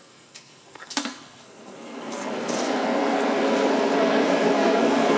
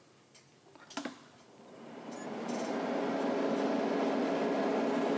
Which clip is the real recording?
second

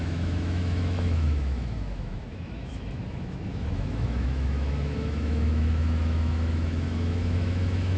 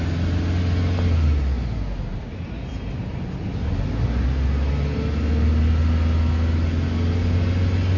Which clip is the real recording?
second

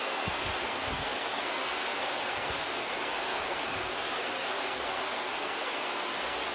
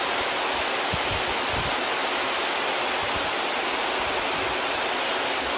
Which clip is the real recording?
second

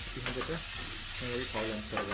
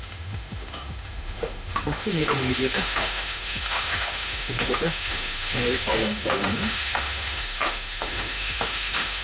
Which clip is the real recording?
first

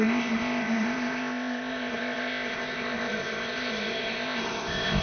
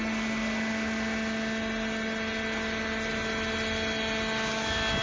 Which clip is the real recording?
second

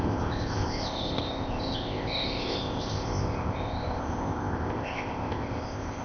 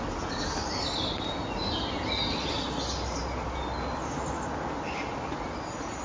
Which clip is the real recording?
second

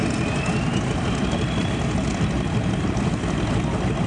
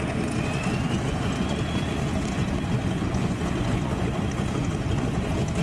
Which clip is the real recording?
first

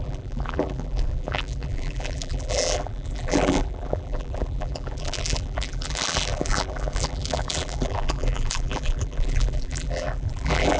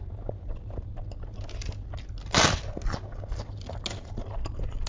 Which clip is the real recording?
second